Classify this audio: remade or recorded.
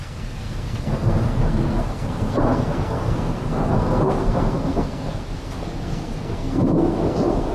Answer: remade